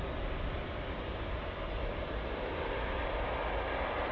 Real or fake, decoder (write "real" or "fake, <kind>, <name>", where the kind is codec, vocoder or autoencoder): real